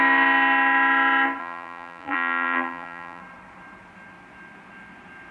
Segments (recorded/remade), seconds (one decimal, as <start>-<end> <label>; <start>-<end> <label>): 0.0-1.4 recorded; 1.4-3.2 remade; 3.2-5.3 recorded